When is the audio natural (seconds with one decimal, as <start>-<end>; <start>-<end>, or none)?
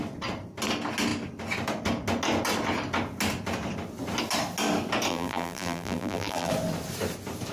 0.0-5.1; 6.5-7.5